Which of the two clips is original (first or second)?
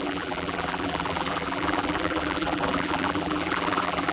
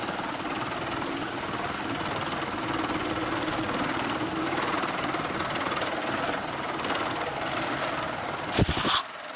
second